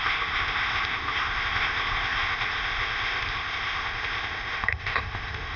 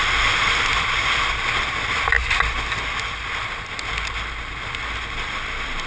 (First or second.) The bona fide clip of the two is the second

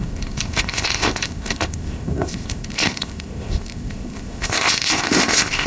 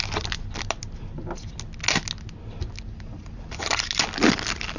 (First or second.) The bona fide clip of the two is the second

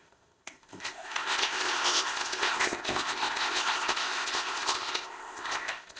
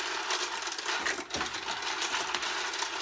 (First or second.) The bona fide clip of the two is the second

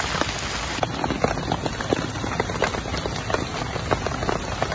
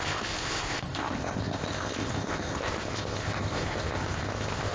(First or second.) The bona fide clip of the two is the first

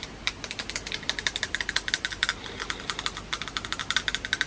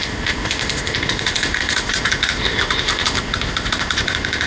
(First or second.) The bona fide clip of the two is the first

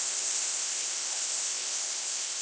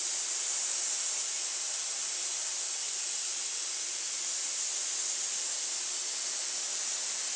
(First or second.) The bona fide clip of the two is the second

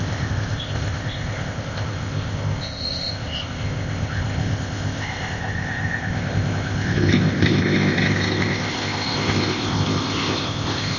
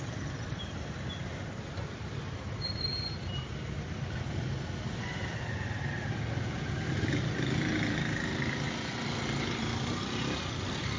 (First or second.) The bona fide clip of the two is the second